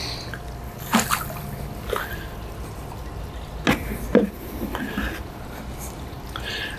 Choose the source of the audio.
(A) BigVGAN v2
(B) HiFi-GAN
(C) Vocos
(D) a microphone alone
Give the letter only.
D